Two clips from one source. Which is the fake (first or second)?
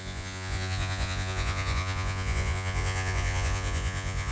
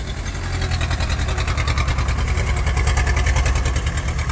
first